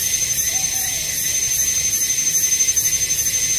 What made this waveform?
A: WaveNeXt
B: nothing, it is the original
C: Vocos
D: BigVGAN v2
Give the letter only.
B